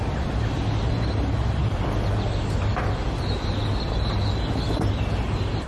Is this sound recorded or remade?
recorded